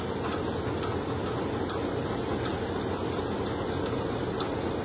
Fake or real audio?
real